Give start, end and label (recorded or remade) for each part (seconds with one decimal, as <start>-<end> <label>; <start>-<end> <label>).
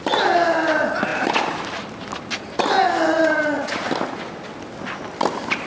0.0-5.7 recorded